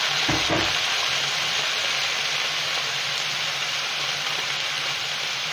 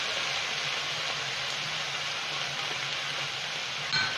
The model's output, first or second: first